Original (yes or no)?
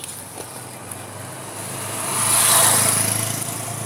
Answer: yes